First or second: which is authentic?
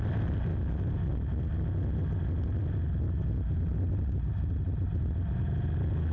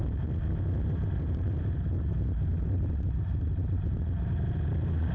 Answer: first